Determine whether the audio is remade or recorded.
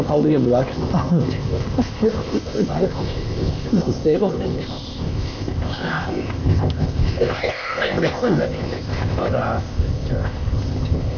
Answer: remade